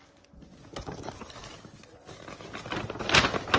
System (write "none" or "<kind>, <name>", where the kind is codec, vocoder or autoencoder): none